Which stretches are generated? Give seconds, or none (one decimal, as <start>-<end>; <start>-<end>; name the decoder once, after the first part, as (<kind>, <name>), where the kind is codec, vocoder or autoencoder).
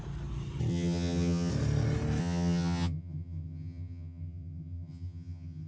0.7-1.5 (vocoder, HiFi-GAN); 2.2-5.7